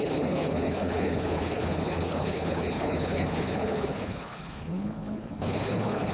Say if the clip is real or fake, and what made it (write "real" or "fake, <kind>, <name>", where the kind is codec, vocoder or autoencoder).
fake, codec, HILCodec